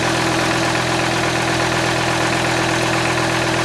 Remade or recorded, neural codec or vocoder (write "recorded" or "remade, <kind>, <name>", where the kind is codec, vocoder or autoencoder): recorded